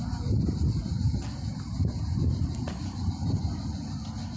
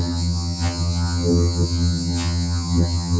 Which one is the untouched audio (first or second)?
first